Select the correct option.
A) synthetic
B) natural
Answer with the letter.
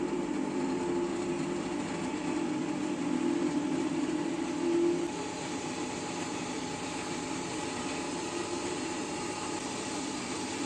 A